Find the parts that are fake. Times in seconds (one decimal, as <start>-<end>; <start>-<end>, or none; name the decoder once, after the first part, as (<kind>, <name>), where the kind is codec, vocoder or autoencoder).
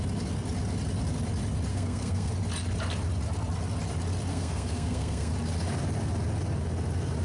1.7-2.3 (codec, SNAC); 4.3-5.3